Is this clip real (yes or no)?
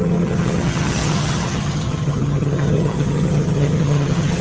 no